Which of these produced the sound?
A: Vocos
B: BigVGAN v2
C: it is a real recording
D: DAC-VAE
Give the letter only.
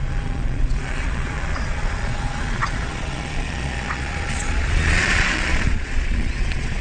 A